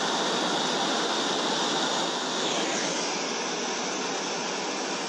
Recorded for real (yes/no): yes